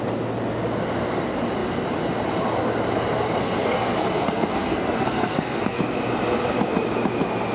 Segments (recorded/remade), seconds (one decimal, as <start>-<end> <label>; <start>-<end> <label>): 0.0-3.6 recorded; 3.6-5.8 remade; 5.8-7.5 recorded